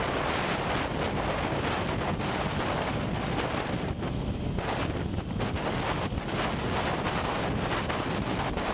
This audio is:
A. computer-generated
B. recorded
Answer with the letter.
B